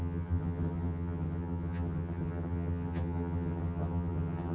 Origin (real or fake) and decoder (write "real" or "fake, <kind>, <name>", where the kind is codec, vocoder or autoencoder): fake, vocoder, HiFi-GAN